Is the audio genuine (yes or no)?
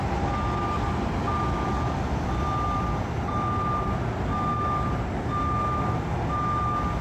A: yes